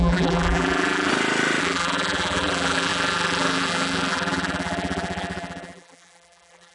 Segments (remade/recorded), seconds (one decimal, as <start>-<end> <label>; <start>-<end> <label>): 0.0-1.1 remade; 1.1-1.6 recorded; 1.6-6.7 remade